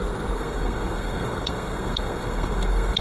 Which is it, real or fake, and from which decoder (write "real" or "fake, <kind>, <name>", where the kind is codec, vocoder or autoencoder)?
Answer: fake, codec, SNAC